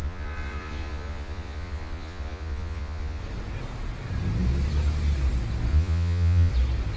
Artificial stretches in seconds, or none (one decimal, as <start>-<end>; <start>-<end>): 0.0-3.2; 5.7-6.5